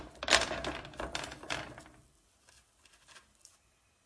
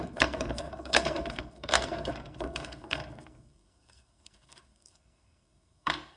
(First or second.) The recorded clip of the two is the first